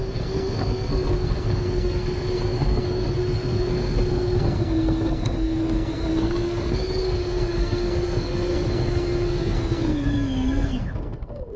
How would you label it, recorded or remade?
remade